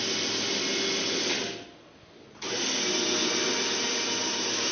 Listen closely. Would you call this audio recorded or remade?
recorded